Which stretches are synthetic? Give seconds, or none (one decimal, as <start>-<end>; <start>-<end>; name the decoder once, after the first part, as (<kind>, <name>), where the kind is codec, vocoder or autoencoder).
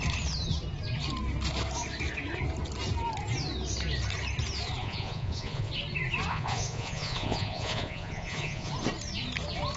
4.8-5.7 (vocoder, Vocos); 6.3-8.7